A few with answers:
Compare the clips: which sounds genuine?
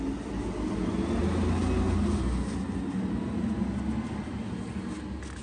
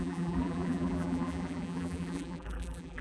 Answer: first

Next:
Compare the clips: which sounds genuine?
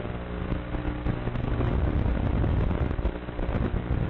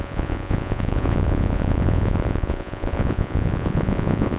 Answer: first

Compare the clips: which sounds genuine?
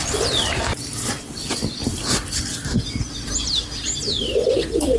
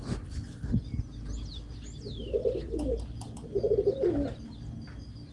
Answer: second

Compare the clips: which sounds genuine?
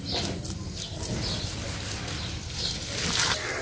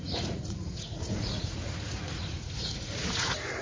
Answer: first